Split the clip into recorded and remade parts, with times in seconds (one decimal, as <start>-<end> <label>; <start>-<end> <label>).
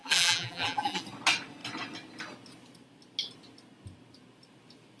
0.0-1.0 remade; 1.0-5.0 recorded